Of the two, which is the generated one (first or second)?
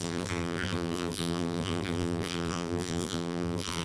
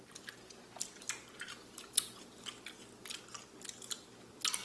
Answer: first